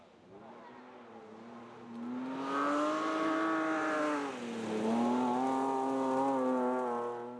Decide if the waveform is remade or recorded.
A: recorded